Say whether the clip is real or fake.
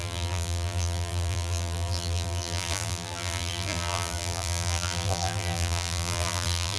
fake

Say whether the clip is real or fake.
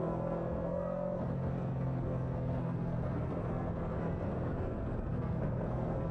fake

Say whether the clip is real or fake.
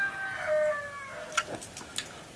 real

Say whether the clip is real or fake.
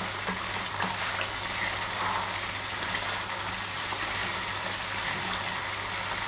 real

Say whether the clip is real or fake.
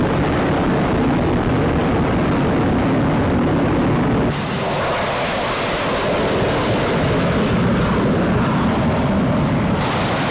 real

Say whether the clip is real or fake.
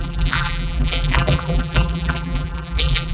fake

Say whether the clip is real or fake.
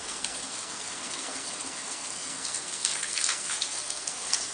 fake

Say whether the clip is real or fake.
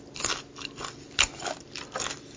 real